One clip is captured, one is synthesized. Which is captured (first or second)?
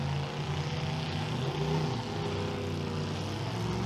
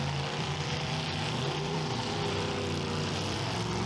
first